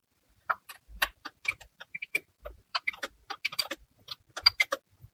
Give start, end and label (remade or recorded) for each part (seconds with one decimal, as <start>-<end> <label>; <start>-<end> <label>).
0.0-3.1 remade; 3.1-3.5 recorded; 3.5-4.0 remade; 4.0-5.1 recorded